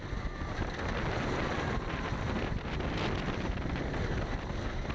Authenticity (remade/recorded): recorded